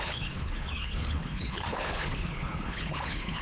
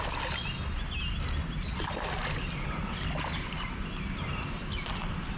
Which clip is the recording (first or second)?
second